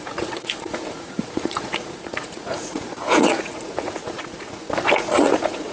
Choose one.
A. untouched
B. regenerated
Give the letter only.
B